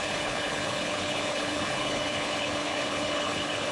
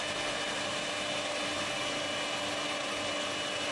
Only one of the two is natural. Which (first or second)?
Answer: second